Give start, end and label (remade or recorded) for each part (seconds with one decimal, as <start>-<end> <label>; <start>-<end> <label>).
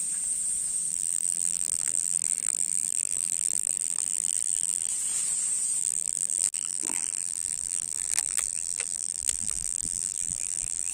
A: 0.0-0.9 recorded; 0.9-4.9 remade; 4.9-5.8 recorded; 5.8-10.9 remade